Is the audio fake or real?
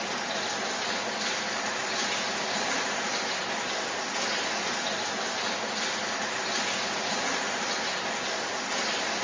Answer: real